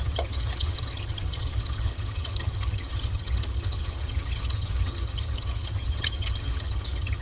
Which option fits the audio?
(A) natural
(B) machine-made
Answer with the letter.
B